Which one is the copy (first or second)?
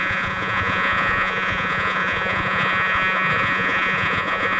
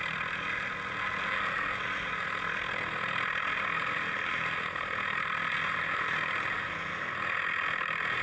first